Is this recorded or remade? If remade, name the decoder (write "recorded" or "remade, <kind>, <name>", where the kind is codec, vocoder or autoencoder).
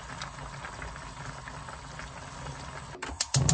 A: recorded